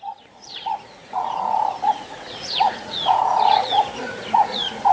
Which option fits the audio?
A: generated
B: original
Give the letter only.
A